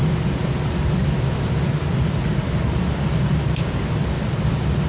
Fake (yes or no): no